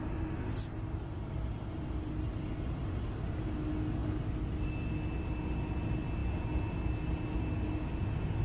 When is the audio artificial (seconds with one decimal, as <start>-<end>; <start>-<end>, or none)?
none